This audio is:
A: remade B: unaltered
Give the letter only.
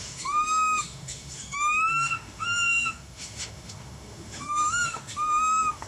A